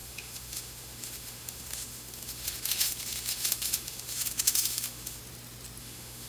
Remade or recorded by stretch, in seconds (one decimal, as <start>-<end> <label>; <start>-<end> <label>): 0.0-5.2 remade; 5.2-5.8 recorded; 5.8-6.3 remade